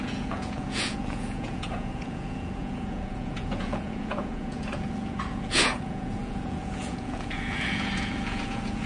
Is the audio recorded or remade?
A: remade